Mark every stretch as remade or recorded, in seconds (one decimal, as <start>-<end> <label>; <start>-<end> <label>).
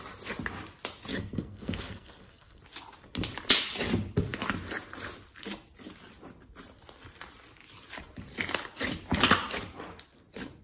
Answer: 0.0-1.1 recorded; 1.1-2.6 remade; 2.6-10.6 recorded